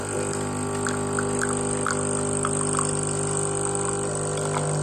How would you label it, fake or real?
real